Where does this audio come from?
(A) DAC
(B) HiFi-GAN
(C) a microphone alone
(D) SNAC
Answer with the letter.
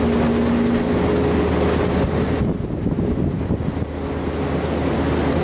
C